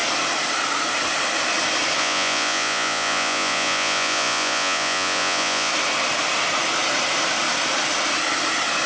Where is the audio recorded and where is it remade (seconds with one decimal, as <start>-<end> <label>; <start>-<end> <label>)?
0.0-2.0 recorded; 2.0-5.7 remade; 5.7-8.9 recorded